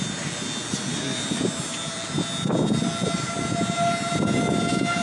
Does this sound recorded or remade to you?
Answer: recorded